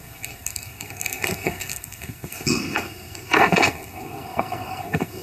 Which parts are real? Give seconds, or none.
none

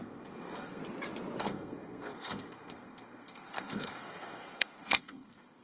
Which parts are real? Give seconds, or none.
0.8-1.4

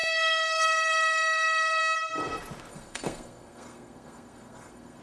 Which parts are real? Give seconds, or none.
1.8-2.7

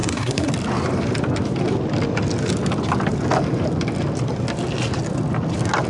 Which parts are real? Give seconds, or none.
0.5-5.9

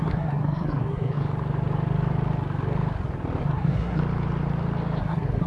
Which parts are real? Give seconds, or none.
1.2-3.4; 4.0-5.0

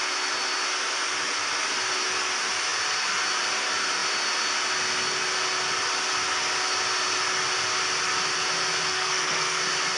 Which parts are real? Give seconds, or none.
0.0-8.9; 9.6-10.0

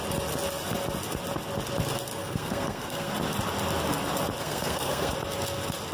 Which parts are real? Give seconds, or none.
0.0-2.2; 3.1-4.4; 5.1-5.9